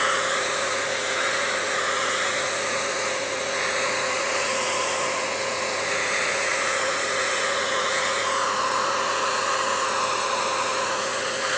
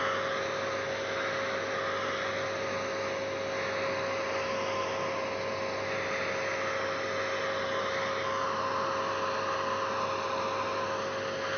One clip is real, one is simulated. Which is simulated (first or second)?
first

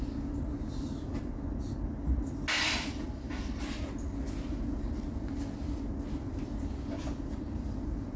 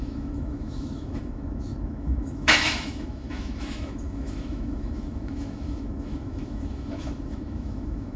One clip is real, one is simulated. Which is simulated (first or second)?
second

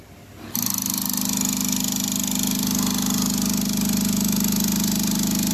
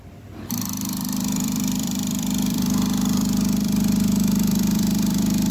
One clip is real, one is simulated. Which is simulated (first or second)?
second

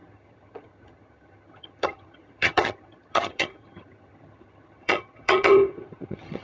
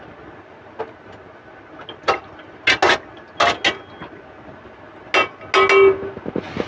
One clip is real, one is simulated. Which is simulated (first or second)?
first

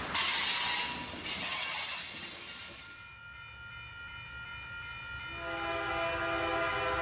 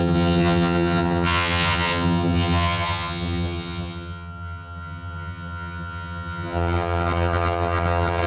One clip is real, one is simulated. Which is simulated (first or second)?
second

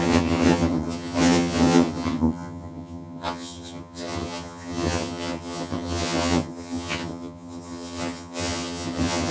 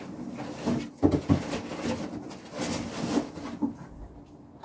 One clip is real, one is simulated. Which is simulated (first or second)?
first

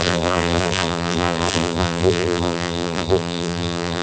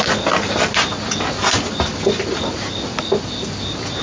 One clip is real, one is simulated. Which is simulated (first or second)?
first